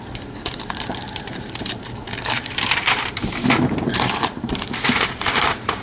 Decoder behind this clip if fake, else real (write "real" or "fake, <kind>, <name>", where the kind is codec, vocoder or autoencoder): fake, vocoder, BigVGAN v2